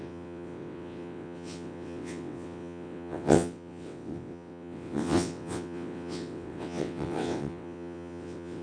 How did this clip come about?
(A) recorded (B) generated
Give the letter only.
B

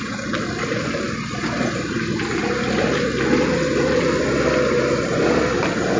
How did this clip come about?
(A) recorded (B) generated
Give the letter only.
A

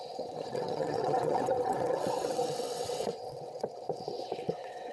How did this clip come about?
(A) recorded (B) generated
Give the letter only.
B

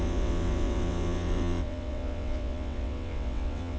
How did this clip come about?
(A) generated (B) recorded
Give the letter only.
A